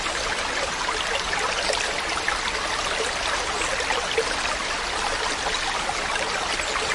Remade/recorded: recorded